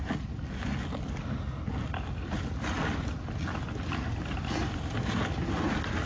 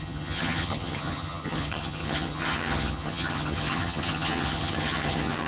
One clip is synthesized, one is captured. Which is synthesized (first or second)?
second